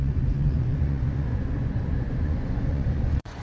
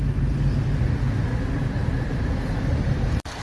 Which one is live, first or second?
second